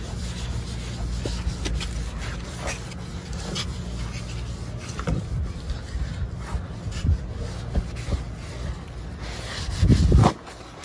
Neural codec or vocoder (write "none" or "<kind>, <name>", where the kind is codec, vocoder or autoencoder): none